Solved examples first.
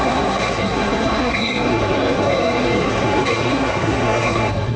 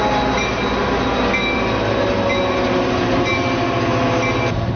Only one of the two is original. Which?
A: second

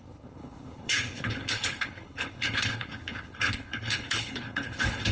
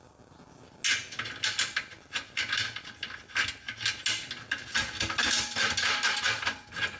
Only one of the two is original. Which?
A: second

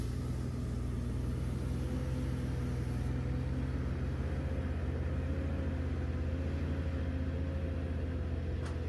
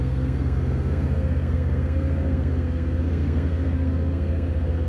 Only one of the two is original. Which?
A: first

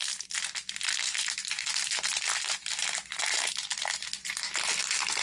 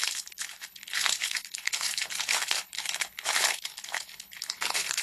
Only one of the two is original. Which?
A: first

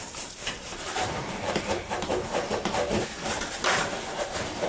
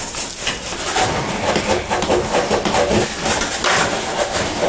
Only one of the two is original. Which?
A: second